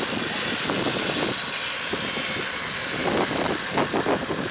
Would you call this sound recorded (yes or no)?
yes